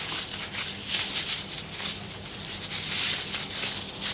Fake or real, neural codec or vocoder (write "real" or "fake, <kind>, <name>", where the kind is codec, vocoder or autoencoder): real